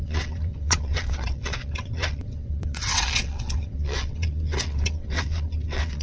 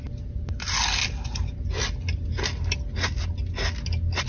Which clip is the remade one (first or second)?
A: first